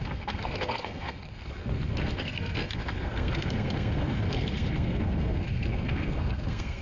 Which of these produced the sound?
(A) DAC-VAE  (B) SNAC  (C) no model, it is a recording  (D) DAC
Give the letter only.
B